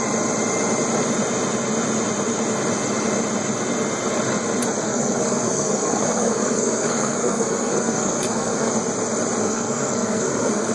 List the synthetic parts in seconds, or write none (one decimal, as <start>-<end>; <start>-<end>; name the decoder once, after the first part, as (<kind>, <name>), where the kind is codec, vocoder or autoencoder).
4.8-8.7 (codec, SNAC); 9.4-10.7